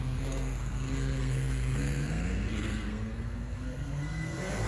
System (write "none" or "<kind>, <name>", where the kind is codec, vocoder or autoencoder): codec, SNAC